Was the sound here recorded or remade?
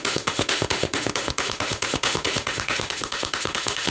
remade